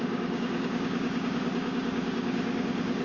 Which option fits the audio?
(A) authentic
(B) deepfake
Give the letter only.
B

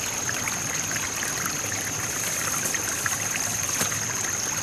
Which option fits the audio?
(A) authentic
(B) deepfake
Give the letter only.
A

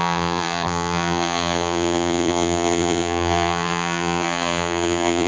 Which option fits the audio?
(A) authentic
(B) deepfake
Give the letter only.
B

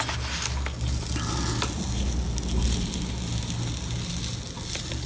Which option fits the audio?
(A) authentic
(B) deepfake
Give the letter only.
A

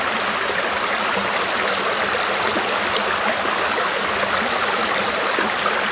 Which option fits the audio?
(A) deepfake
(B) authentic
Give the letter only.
B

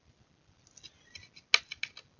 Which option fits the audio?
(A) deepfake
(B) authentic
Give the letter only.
B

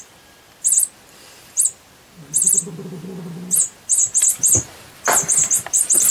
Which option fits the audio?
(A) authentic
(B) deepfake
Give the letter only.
B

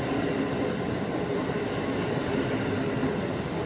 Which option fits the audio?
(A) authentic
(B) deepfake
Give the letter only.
A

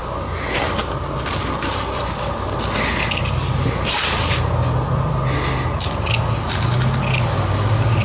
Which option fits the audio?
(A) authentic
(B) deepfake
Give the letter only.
A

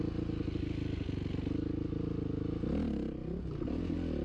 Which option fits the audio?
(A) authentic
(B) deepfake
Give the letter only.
A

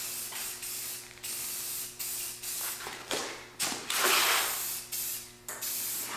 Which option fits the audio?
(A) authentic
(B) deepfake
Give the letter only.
A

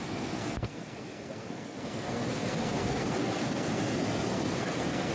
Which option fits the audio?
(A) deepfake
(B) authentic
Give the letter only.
A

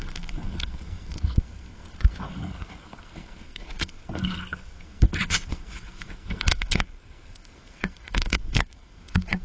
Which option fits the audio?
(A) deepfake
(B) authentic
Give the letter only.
A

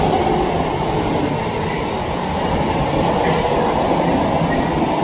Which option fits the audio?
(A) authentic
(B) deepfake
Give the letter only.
A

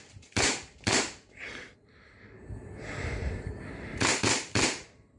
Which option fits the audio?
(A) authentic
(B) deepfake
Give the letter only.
B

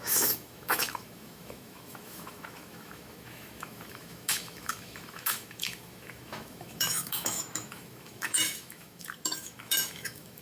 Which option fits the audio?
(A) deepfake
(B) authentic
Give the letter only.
A